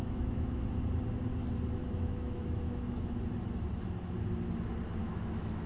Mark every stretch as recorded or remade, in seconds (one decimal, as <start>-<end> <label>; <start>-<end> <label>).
0.0-0.6 remade; 0.6-1.8 recorded; 1.8-3.2 remade; 3.2-5.0 recorded; 5.0-5.7 remade